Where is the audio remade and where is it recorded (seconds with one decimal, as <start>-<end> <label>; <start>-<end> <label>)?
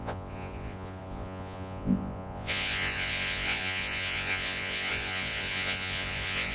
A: 0.0-6.5 remade